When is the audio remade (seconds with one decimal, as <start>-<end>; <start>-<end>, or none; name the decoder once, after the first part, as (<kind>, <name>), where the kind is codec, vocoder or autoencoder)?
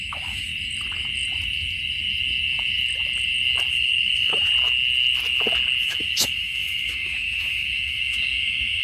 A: 0.0-0.5 (autoencoder, DAC-VAE); 3.7-4.5; 5.8-8.8